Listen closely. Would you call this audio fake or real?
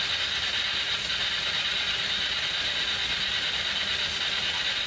real